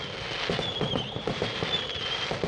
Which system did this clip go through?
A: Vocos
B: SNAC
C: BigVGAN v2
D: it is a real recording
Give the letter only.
D